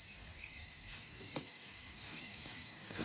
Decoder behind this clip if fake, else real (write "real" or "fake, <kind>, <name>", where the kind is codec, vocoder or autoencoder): fake, codec, DAC